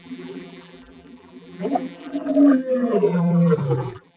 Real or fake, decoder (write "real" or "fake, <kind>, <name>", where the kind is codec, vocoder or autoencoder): fake, vocoder, BigVGAN v2